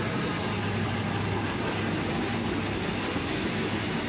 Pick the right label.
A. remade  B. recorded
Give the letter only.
B